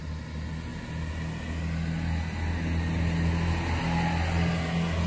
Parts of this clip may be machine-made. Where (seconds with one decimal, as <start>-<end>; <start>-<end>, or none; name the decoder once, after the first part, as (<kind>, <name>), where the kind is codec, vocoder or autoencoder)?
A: none